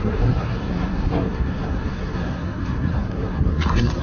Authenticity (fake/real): fake